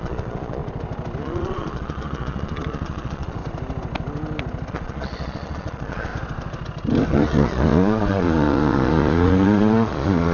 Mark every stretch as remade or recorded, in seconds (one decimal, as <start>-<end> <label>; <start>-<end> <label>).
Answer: 0.0-0.6 remade; 0.6-1.2 recorded; 1.2-3.4 remade; 3.4-4.7 recorded; 4.7-6.1 remade; 6.1-7.1 recorded; 7.1-10.3 remade